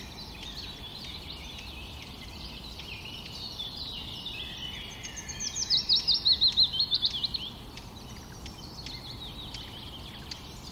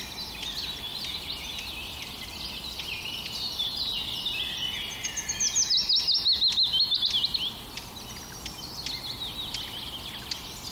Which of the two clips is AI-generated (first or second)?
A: first